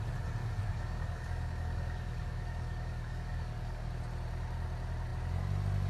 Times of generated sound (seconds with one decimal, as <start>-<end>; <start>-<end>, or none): 0.4-3.9